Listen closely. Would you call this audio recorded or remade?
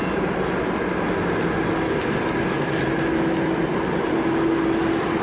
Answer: recorded